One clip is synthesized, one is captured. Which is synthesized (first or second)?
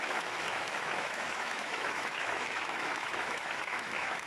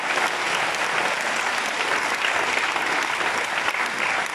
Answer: first